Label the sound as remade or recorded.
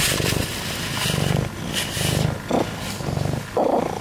recorded